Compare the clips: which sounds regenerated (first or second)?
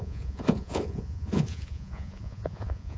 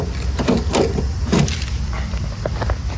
first